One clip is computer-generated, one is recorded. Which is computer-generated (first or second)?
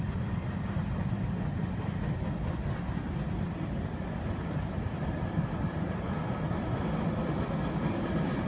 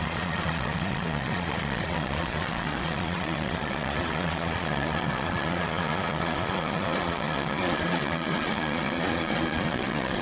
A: second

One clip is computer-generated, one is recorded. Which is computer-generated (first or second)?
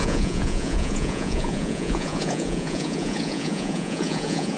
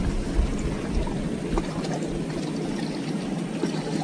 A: first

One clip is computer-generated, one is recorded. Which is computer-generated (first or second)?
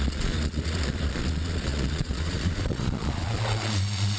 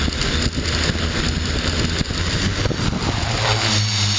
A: first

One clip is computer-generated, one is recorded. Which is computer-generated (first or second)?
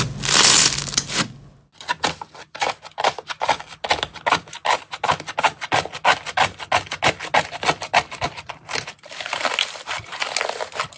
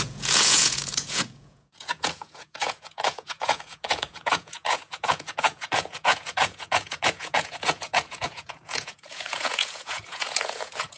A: second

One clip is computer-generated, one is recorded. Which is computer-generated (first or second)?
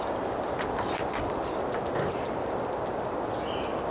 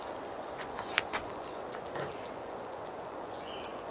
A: second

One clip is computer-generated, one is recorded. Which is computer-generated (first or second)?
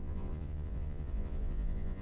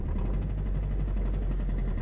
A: first